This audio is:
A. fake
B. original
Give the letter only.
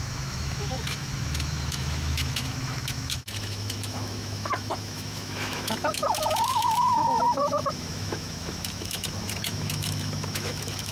A